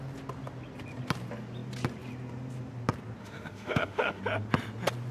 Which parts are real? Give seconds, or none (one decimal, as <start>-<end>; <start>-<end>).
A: 0.0-3.2; 4.2-5.1